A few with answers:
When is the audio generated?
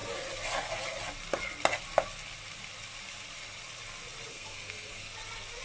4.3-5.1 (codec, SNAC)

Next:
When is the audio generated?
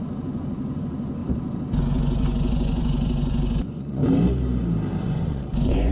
0.0-1.2 (vocoder, Vocos); 1.8-4.0; 5.0-5.9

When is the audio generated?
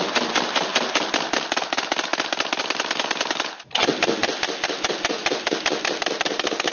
none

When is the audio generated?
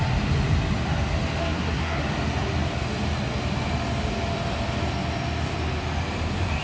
1.4-2.0 (codec, SNAC)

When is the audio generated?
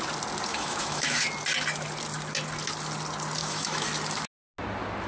0.5-1.2 (autoencoder, DAC-VAE); 3.4-3.9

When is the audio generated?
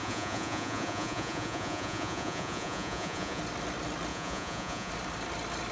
0.0-3.4 (vocoder, Vocos); 4.1-4.9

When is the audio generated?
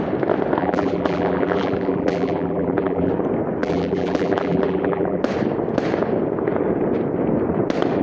0.6-3.1 (vocoder, BigVGAN v2); 3.6-5.2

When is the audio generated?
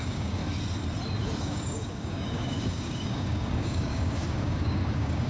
0.0-0.4 (codec, DAC); 1.4-5.3